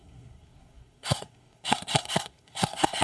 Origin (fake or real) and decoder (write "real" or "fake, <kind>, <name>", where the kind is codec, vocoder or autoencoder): fake, codec, SNAC